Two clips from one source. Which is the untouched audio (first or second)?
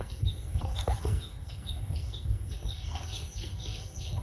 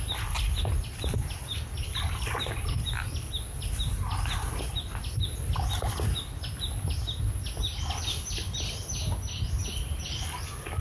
second